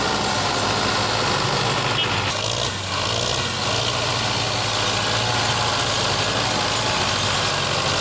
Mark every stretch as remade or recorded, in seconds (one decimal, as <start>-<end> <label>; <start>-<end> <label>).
0.0-8.0 recorded